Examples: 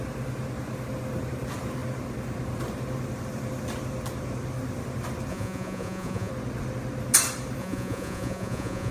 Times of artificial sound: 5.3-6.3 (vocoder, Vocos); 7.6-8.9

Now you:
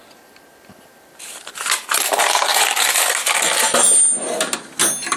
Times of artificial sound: 0.0-2.1 (vocoder, BigVGAN v2)